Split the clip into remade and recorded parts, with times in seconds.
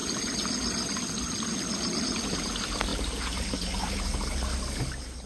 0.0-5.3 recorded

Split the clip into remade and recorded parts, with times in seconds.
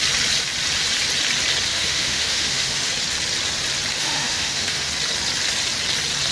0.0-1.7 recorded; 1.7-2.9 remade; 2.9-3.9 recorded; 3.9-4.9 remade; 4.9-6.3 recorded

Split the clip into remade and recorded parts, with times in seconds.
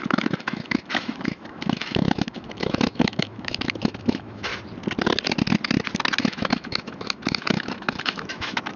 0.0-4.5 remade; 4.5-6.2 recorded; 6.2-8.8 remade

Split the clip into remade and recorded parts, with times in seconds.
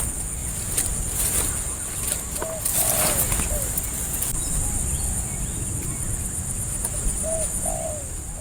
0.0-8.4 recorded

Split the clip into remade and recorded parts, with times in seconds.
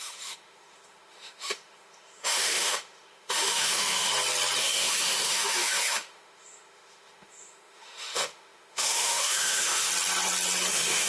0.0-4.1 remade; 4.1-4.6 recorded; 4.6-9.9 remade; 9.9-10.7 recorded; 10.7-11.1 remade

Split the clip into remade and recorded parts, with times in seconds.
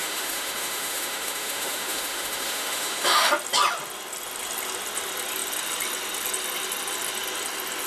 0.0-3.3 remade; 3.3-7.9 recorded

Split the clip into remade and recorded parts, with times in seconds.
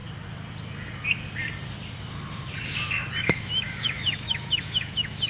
0.0-3.2 recorded; 3.2-5.3 remade